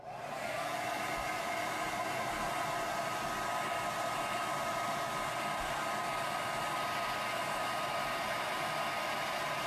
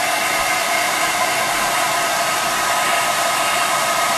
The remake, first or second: second